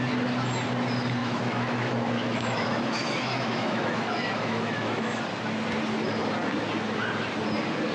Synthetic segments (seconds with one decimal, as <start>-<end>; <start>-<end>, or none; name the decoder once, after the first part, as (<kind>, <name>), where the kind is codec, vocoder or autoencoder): 1.2-5.2 (autoencoder, DAC-VAE)